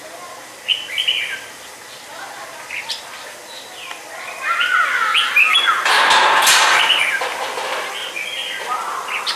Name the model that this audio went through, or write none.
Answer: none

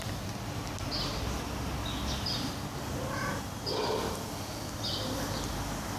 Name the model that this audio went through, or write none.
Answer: none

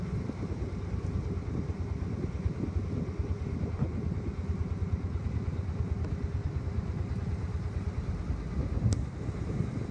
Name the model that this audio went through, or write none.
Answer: none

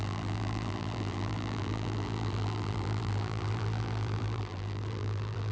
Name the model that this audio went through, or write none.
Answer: vocoder, BigVGAN v2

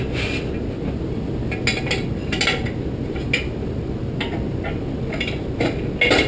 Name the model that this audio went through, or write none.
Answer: none